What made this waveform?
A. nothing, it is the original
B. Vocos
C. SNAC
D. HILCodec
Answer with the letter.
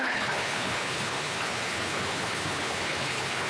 D